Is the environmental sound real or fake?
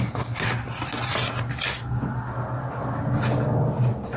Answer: real